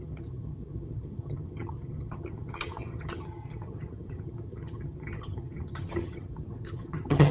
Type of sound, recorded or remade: remade